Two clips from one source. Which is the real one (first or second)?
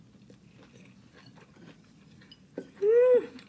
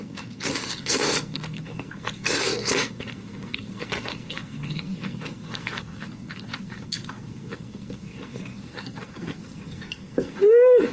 first